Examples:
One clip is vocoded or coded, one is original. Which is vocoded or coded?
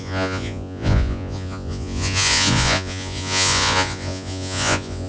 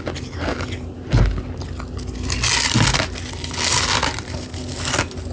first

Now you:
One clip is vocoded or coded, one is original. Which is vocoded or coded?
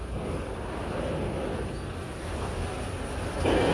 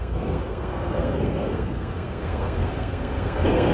second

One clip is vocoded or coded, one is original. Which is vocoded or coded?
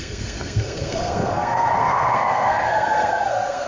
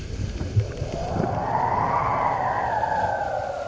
first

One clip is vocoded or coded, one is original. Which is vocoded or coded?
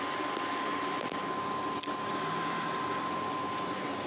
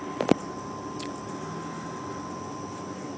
first